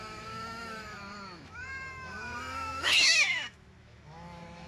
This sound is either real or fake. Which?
fake